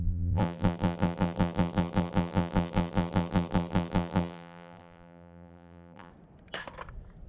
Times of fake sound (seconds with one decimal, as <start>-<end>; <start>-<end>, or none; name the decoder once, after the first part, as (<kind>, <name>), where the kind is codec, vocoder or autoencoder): 0.0-6.1 (vocoder, BigVGAN v2)